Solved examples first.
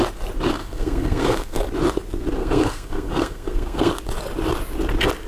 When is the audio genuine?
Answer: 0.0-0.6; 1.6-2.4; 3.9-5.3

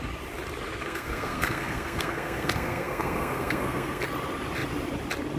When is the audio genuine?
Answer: 0.0-0.8; 4.0-5.4

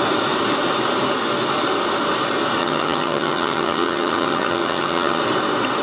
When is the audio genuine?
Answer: 0.0-2.6; 5.2-5.8

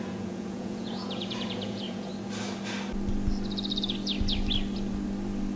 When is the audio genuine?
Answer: 2.1-5.6

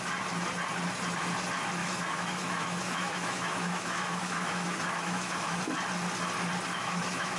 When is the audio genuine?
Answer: 0.0-1.8; 5.6-6.7

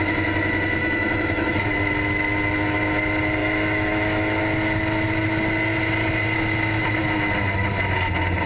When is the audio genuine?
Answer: 0.0-0.8; 1.7-3.4; 4.4-8.5